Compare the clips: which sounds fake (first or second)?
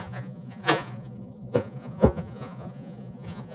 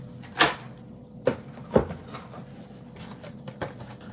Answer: first